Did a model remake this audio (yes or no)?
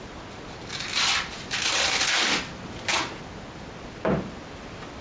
no